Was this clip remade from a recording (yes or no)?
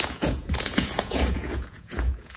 yes